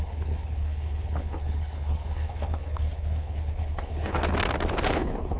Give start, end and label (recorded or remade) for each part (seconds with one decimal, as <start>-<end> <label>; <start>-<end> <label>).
0.0-4.3 remade; 4.3-5.0 recorded; 5.0-5.4 remade